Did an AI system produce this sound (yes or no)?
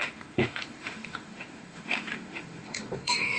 yes